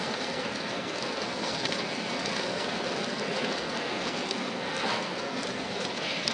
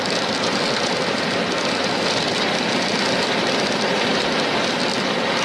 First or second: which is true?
second